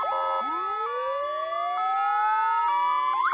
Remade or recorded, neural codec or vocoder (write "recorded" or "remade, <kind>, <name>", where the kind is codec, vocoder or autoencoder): recorded